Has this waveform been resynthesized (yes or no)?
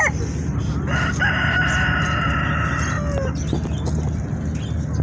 no